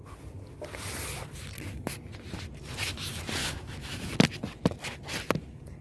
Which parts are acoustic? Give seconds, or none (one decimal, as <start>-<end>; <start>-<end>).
0.0-3.4; 4.1-5.8